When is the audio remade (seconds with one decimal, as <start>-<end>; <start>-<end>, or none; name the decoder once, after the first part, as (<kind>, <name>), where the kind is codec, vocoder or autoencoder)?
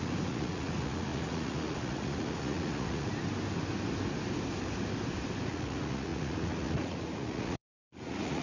0.0-3.1 (vocoder, Vocos); 5.4-8.4